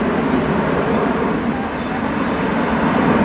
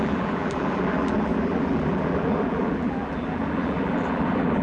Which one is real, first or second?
first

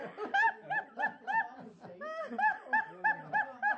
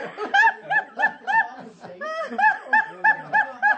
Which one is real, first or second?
first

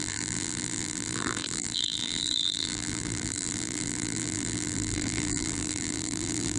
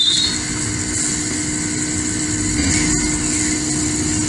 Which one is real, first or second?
second